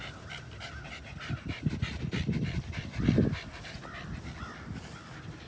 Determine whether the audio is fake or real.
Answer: real